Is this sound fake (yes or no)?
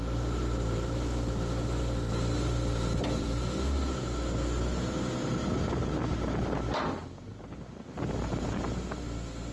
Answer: no